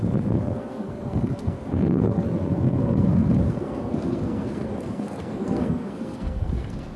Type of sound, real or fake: fake